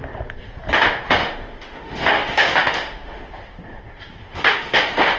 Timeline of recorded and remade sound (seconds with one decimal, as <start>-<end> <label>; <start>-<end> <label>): 0.0-1.2 recorded; 1.2-3.3 remade; 3.3-4.2 recorded; 4.2-5.2 remade